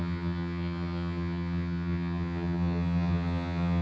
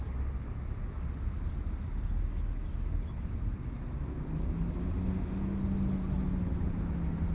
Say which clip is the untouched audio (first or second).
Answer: second